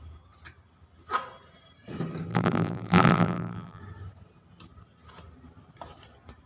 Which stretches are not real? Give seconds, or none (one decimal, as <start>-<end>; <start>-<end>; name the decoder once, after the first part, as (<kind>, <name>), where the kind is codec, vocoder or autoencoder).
2.3-3.8 (vocoder, BigVGAN v2)